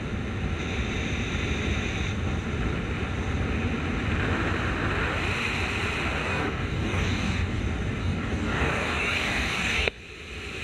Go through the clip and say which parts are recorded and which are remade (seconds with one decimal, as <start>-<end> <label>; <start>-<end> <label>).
0.0-6.2 recorded; 6.2-7.6 remade; 7.6-8.0 recorded; 8.0-10.0 remade; 10.0-10.6 recorded

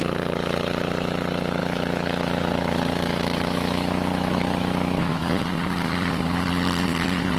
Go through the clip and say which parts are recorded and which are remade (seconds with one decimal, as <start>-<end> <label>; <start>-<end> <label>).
0.0-1.6 recorded; 1.6-5.4 remade; 5.4-7.4 recorded

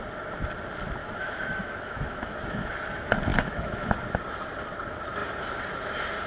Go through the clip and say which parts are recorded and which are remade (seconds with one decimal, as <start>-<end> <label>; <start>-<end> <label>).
0.0-1.0 recorded; 1.0-2.7 remade; 2.7-3.3 recorded; 3.3-3.9 remade; 3.9-6.3 recorded

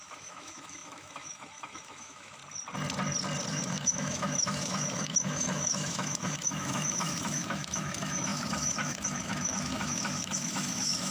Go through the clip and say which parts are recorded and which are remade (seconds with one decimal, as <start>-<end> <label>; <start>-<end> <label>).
0.0-2.4 remade; 2.4-3.5 recorded; 3.5-11.1 remade

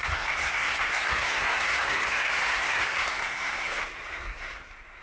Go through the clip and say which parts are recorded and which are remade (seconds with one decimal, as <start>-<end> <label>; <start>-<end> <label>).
0.0-5.0 remade

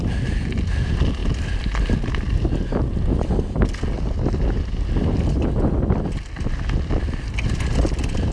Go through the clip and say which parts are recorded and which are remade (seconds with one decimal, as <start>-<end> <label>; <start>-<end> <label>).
0.0-8.3 recorded